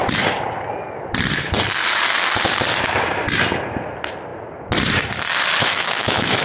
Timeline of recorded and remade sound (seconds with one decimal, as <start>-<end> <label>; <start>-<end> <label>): 0.0-5.6 recorded; 5.6-6.4 remade